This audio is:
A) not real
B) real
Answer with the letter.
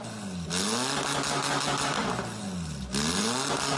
B